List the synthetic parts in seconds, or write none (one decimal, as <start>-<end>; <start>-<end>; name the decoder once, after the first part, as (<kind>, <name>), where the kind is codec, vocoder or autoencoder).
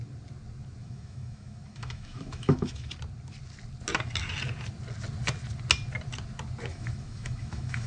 0.8-2.9 (autoencoder, DAC-VAE); 6.7-7.9